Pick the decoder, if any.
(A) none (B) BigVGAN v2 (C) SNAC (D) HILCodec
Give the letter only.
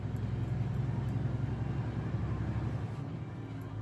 A